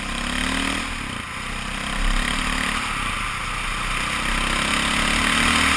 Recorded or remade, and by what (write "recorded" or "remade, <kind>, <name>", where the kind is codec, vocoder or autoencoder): recorded